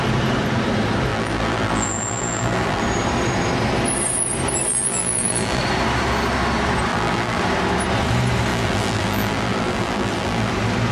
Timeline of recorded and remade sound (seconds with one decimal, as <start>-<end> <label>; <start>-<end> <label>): 0.0-1.1 recorded; 1.1-2.8 remade; 2.8-4.7 recorded; 4.7-5.6 remade; 5.6-6.9 recorded; 6.9-7.4 remade; 7.4-8.5 recorded; 8.5-10.5 remade; 10.5-10.9 recorded